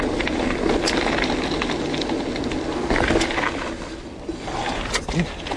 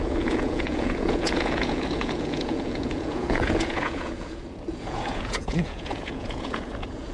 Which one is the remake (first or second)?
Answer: second